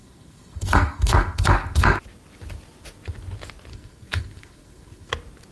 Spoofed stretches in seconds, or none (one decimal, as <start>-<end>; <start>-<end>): 0.0-2.0; 3.7-5.1